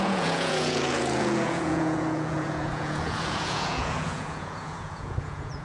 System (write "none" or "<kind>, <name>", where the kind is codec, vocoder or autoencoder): vocoder, Vocos